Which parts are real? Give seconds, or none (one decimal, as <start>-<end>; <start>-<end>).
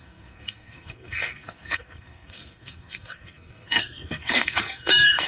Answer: none